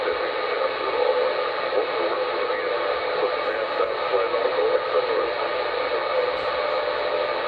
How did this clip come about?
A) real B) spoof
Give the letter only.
A